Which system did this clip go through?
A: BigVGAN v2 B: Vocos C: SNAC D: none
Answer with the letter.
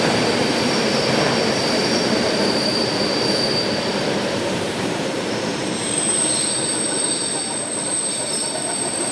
A